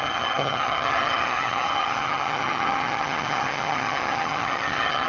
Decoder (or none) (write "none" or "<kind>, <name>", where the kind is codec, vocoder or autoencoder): vocoder, HiFi-GAN